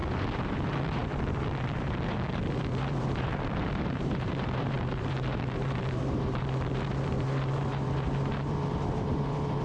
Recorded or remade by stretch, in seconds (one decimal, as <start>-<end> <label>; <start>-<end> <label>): 0.0-9.6 remade

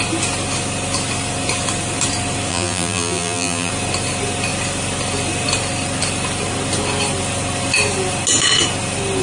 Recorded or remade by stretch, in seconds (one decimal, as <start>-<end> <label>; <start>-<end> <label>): 0.0-2.5 recorded; 2.5-3.7 remade; 3.7-9.2 recorded

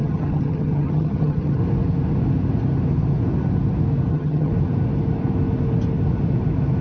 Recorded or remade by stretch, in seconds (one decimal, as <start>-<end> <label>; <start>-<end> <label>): 0.0-1.6 remade; 1.6-4.1 recorded; 4.1-4.5 remade; 4.5-6.8 recorded

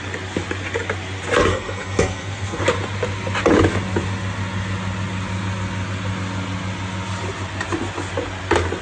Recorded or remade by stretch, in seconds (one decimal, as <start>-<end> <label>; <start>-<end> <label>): 0.0-1.5 recorded; 1.5-2.6 remade; 2.6-8.8 recorded

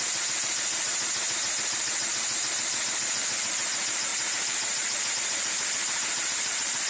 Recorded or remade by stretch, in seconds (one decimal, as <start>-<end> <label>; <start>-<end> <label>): 0.0-0.9 remade; 0.9-1.5 recorded; 1.5-6.9 remade

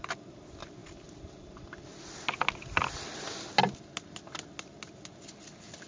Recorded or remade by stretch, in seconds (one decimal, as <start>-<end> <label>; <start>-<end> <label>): 0.0-5.9 recorded

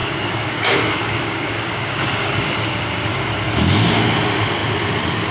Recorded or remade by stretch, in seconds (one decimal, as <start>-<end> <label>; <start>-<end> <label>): 0.0-3.2 remade; 3.2-5.3 recorded

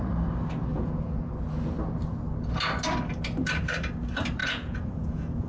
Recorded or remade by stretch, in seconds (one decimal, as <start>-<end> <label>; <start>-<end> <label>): 0.0-0.7 recorded; 0.7-1.3 remade; 1.3-4.4 recorded; 4.4-5.5 remade